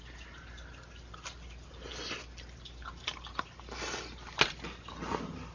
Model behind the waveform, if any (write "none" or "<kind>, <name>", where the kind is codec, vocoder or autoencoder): none